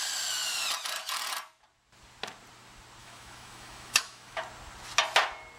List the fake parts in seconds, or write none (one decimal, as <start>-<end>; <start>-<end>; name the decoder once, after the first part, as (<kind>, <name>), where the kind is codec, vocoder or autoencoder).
3.0-4.4 (autoencoder, DAC-VAE)